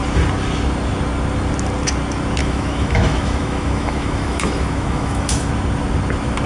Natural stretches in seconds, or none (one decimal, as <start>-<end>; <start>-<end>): 0.0-2.4; 5.5-6.5